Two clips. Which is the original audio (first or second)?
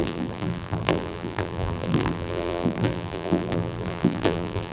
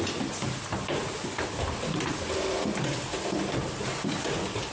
second